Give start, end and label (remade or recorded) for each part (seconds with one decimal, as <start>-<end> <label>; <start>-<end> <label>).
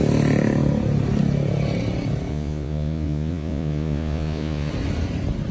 0.0-2.3 recorded; 2.3-4.7 remade; 4.7-5.5 recorded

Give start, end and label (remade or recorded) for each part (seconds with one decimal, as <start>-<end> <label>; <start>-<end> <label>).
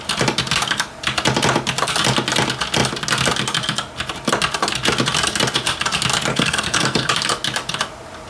0.0-6.3 recorded; 6.3-7.1 remade; 7.1-8.3 recorded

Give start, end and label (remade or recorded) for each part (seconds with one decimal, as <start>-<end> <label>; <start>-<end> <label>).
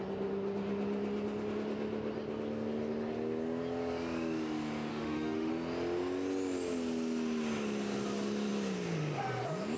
0.0-4.9 recorded; 4.9-5.5 remade; 5.5-9.8 recorded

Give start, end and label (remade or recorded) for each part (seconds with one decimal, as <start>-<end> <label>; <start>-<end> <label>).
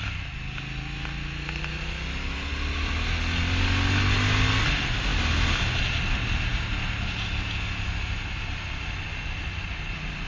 0.0-10.3 recorded